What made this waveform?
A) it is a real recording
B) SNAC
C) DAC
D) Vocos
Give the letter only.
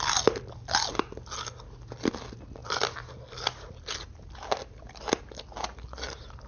A